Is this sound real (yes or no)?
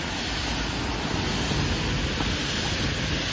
yes